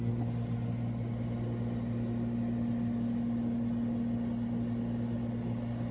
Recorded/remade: recorded